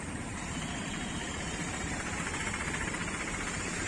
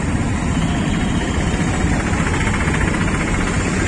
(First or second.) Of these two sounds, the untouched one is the second